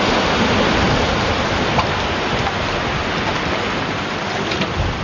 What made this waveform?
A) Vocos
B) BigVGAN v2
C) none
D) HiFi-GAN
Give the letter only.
C